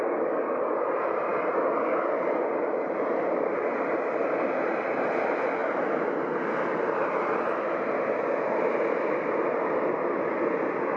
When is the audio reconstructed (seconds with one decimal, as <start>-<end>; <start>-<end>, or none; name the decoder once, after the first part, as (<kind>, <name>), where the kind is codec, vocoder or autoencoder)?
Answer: none